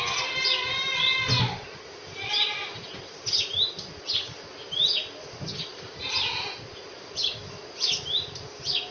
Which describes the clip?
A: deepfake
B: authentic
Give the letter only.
B